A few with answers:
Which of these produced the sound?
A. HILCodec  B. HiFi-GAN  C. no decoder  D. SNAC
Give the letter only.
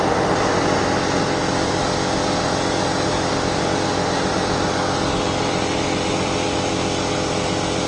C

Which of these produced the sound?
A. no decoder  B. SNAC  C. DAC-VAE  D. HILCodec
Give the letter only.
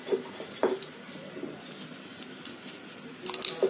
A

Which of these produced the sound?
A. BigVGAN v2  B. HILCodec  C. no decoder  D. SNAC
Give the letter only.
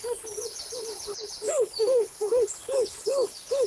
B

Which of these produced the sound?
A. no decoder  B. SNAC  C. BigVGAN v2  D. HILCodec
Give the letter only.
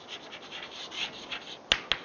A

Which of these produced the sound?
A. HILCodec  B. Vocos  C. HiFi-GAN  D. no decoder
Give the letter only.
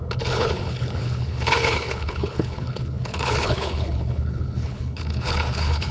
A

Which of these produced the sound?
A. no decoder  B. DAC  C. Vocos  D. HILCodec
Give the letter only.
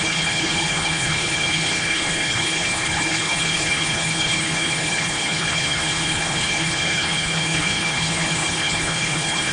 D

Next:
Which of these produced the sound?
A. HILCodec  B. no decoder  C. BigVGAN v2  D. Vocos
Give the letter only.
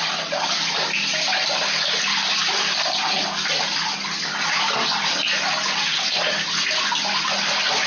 B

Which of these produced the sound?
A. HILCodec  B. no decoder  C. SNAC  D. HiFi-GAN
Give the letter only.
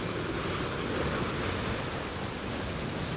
B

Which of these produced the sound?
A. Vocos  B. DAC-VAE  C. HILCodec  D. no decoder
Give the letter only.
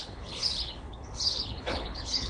C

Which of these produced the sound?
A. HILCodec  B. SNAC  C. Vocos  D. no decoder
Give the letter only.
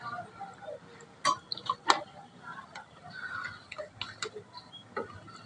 D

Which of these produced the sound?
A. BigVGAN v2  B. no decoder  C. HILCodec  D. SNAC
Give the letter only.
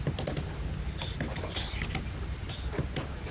B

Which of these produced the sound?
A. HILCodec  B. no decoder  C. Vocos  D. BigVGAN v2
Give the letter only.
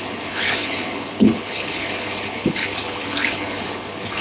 A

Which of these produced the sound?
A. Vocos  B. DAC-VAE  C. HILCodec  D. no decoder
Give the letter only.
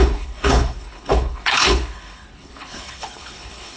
C